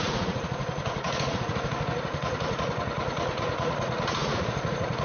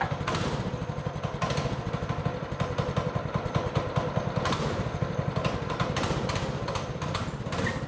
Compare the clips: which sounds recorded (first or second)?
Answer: second